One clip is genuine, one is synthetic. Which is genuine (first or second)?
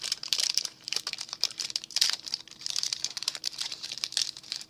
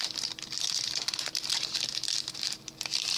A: second